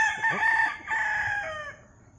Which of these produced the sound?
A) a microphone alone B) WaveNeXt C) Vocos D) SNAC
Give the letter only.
A